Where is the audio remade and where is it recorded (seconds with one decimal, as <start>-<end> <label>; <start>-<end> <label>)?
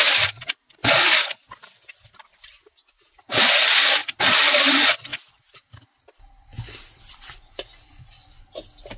0.0-5.1 remade; 5.1-7.0 recorded; 7.0-9.0 remade